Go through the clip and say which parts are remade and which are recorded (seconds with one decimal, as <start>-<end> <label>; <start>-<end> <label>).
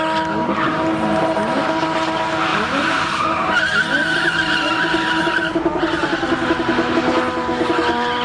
0.0-0.4 recorded; 0.4-1.4 remade; 1.4-2.5 recorded; 2.5-5.5 remade; 5.5-8.2 recorded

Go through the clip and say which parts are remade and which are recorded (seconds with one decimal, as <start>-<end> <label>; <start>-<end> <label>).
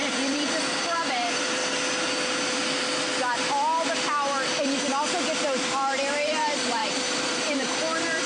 0.0-1.6 remade; 1.6-6.0 recorded; 6.0-8.3 remade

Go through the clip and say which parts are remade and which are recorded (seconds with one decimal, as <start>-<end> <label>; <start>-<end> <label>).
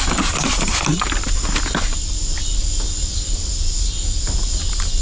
0.0-5.0 recorded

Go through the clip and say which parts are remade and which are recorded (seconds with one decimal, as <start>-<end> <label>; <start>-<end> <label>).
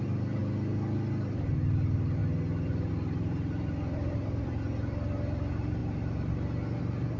0.0-0.4 remade; 0.4-1.3 recorded; 1.3-2.2 remade; 2.2-2.9 recorded; 2.9-5.8 remade; 5.8-6.8 recorded; 6.8-7.2 remade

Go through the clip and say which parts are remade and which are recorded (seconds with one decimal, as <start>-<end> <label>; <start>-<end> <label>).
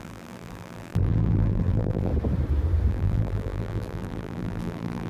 0.0-2.1 remade; 2.1-2.9 recorded; 2.9-5.1 remade